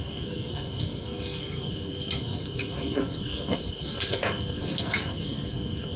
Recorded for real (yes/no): no